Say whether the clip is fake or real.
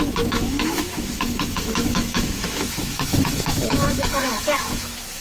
fake